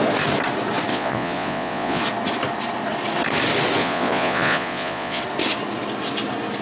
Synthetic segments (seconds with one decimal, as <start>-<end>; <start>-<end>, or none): 0.9-2.0; 3.8-5.2